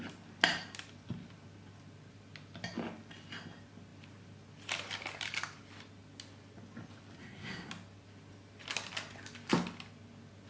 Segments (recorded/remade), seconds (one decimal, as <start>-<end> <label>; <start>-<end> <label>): 0.0-7.2 recorded; 7.2-7.7 remade; 7.7-10.5 recorded